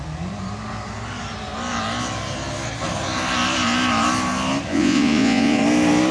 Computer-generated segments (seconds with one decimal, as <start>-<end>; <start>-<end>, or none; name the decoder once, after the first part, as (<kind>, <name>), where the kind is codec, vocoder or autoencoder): 4.7-5.6 (vocoder, Vocos)